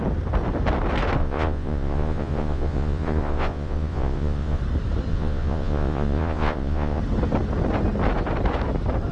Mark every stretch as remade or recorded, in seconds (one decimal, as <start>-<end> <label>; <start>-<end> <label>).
0.0-1.2 recorded; 1.2-4.6 remade; 4.6-5.1 recorded; 5.1-7.0 remade; 7.0-9.1 recorded